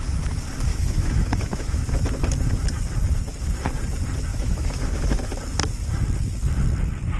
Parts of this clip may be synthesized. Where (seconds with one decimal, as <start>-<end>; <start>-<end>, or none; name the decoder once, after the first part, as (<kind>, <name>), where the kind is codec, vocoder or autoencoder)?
0.7-1.9 (autoencoder, DAC-VAE); 4.3-5.2